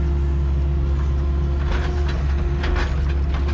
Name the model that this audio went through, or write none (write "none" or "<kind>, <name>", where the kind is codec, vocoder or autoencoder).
none